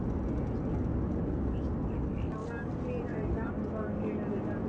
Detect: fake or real real